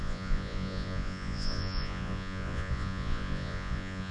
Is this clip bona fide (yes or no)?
no